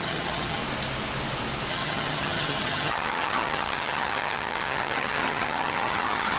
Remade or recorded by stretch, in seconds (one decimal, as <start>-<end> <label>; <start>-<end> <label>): 0.0-0.6 remade; 0.6-1.7 recorded; 1.7-6.4 remade